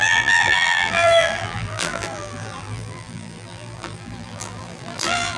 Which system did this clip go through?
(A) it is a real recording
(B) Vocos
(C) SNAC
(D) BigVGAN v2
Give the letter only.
D